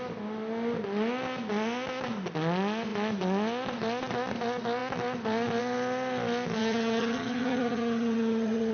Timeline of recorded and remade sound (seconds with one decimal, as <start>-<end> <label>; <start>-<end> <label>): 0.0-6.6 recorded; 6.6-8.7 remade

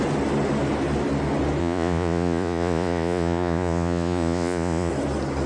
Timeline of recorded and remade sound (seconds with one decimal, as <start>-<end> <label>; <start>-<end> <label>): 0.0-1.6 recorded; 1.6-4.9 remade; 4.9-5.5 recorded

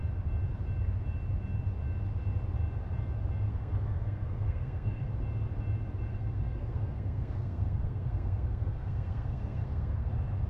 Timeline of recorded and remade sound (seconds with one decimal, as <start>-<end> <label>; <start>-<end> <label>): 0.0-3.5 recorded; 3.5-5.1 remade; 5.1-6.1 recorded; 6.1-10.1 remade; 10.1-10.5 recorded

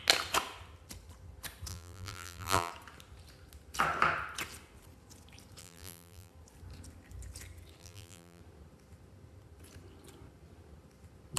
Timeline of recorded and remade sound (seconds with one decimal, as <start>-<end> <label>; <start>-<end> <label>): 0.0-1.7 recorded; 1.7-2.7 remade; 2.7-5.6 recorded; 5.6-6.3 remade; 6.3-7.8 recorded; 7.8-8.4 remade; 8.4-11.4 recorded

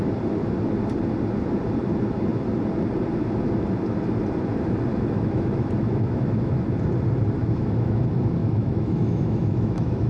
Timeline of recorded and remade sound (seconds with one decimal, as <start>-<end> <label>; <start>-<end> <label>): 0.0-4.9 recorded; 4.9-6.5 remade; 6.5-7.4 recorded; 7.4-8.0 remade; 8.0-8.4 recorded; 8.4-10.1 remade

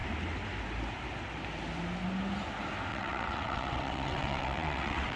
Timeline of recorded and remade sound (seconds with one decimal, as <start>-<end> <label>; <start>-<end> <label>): 0.0-2.9 recorded; 2.9-5.2 remade